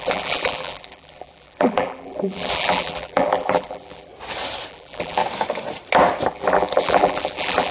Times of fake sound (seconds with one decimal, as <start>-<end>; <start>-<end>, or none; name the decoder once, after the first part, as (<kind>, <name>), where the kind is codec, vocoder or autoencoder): 0.0-4.1 (vocoder, BigVGAN v2); 4.7-5.2; 6.3-7.7